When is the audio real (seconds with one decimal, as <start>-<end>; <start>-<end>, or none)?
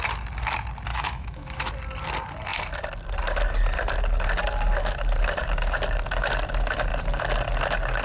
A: 0.0-0.9; 1.7-8.0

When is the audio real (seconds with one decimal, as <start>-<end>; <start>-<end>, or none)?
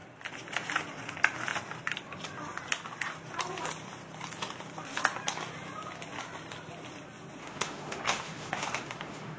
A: 0.0-7.4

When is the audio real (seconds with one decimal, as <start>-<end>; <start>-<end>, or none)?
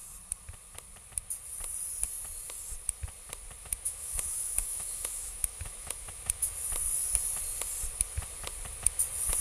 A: 0.0-3.6; 6.5-9.4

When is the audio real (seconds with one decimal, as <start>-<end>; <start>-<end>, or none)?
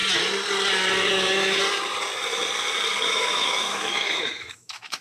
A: 0.0-1.1; 1.6-3.0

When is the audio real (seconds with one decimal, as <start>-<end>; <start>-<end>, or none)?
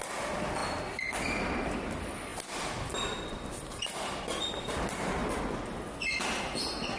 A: 0.0-7.0